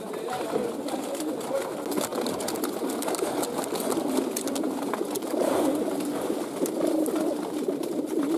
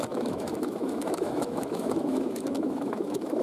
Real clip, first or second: first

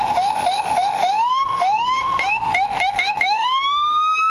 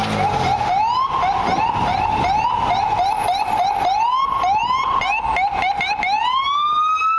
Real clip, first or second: second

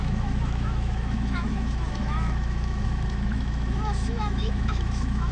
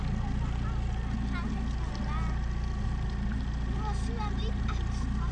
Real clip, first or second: second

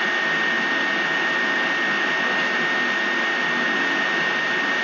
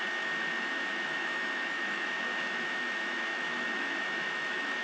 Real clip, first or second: first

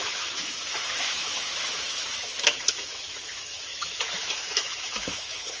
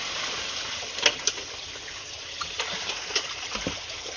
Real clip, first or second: second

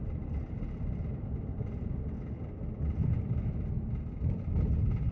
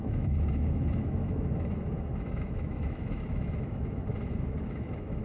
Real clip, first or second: first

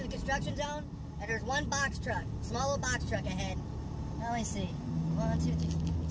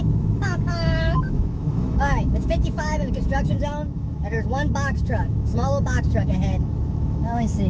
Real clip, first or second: first